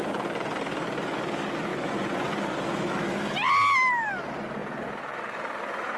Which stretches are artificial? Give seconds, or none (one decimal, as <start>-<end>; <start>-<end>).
1.7-2.3